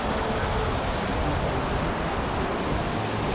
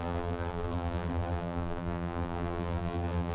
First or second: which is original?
first